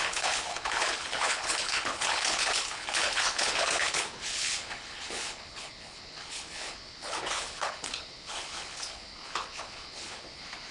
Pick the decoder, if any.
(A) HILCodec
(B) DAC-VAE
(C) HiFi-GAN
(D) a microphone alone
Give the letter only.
A